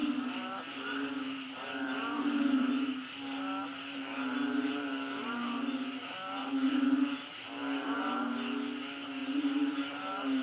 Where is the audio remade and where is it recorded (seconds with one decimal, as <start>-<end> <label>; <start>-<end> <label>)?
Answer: 0.0-2.7 remade; 2.7-6.4 recorded; 6.4-7.3 remade; 7.3-9.2 recorded; 9.2-9.9 remade; 9.9-10.4 recorded